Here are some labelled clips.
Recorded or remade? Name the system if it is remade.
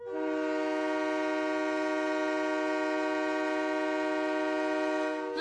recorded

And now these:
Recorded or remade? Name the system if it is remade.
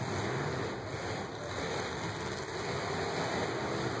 recorded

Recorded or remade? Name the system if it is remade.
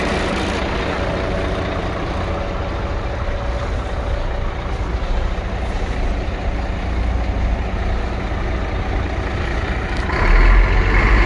recorded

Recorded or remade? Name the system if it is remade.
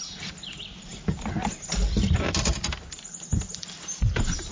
recorded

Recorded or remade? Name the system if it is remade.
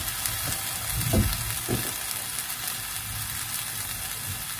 recorded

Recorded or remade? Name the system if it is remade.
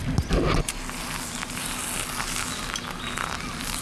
recorded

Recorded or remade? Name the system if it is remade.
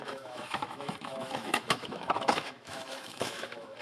remade, autoencoder, DAC-VAE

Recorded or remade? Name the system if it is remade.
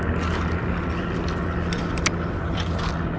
recorded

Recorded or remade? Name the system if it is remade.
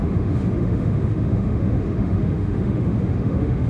remade, autoencoder, DAC-VAE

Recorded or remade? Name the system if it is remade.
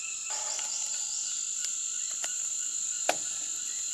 recorded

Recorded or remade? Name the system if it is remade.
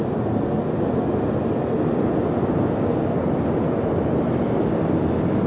recorded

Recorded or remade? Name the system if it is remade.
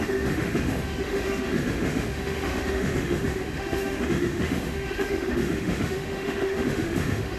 remade, autoencoder, DAC-VAE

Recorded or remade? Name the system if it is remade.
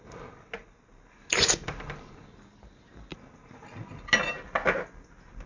recorded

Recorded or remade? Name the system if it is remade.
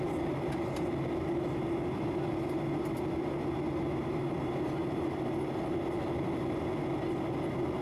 recorded